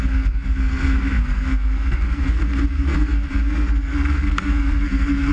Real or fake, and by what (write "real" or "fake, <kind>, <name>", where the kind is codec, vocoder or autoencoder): fake, codec, SNAC